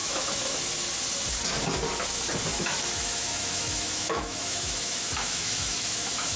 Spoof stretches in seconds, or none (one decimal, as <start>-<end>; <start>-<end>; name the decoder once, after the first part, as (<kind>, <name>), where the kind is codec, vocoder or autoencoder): 0.0-0.6 (autoencoder, DAC-VAE); 2.5-6.4